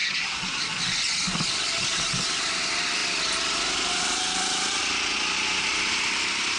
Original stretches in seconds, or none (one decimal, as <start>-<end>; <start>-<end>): 3.0-3.9; 4.8-5.9